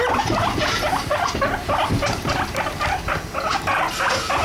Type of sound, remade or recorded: recorded